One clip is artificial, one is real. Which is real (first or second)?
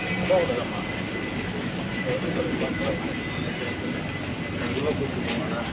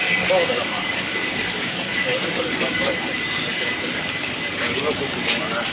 first